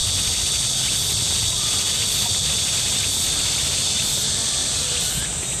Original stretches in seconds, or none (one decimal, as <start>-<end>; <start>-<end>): 0.0-5.6